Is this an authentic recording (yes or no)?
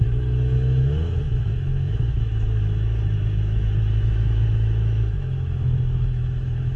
no